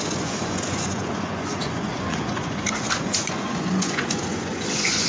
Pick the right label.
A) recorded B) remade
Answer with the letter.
B